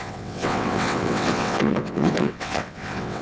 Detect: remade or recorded remade